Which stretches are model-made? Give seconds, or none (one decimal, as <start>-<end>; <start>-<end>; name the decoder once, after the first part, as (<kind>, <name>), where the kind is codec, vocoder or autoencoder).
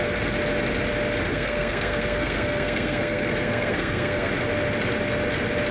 1.3-4.3 (codec, SNAC)